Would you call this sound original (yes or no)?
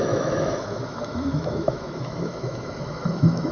no